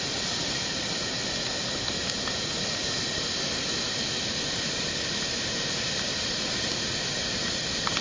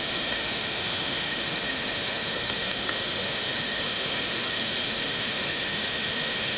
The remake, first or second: second